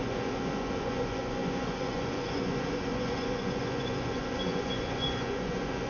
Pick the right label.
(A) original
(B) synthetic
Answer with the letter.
B